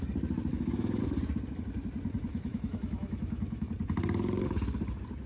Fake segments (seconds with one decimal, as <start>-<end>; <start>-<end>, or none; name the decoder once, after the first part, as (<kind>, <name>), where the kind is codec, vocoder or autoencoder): 0.5-1.0 (autoencoder, DAC-VAE); 2.3-3.7